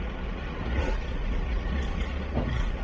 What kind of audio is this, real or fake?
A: fake